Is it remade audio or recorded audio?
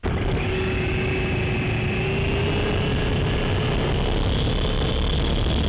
recorded